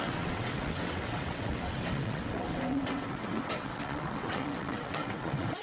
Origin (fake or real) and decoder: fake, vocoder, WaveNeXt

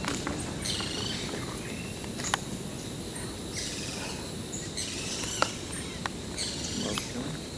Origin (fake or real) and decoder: real